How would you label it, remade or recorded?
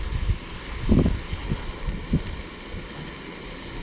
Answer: recorded